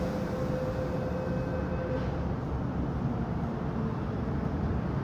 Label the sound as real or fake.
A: real